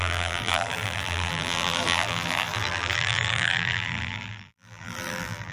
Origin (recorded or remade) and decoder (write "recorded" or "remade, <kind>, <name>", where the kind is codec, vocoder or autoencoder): remade, vocoder, BigVGAN v2